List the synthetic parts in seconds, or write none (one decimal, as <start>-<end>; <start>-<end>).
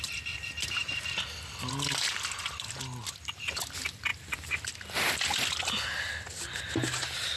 0.8-1.7